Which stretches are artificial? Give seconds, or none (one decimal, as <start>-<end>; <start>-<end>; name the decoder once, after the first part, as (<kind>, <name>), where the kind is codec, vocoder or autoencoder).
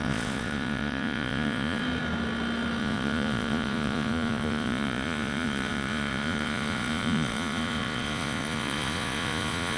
0.0-1.8 (vocoder, Vocos); 2.8-9.8